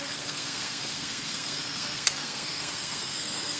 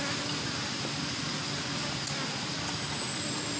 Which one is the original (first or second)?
second